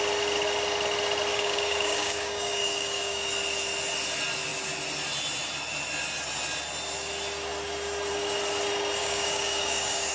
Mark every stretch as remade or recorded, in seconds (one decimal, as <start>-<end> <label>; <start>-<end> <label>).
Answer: 0.0-1.3 recorded; 1.3-3.3 remade; 3.3-9.0 recorded; 9.0-10.1 remade